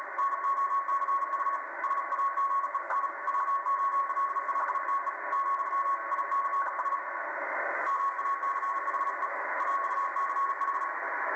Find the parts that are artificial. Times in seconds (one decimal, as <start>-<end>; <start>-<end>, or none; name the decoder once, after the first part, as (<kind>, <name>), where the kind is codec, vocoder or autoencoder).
none